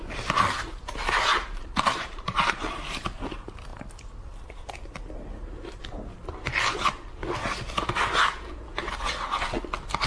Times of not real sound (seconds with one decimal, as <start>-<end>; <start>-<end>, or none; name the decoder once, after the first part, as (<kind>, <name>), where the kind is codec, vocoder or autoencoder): 0.0-2.7 (vocoder, BigVGAN v2)